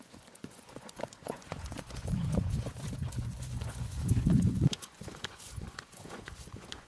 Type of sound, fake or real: fake